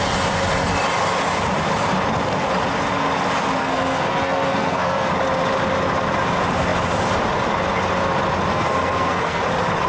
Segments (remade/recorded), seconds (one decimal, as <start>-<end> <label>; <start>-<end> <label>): 0.0-3.6 recorded; 3.6-5.1 remade; 5.1-8.5 recorded; 8.5-9.4 remade; 9.4-9.9 recorded